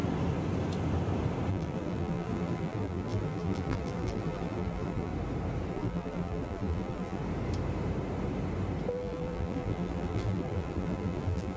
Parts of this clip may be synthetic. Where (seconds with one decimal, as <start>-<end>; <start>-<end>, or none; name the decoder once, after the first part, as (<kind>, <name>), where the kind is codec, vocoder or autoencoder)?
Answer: 1.5-5.1 (vocoder, BigVGAN v2); 5.7-7.2; 8.9-11.6